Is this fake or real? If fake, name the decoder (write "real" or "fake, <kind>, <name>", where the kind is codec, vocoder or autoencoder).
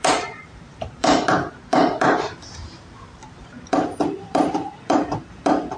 fake, vocoder, BigVGAN v2